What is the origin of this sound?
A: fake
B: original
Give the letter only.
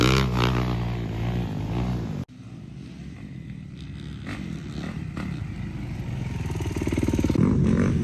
B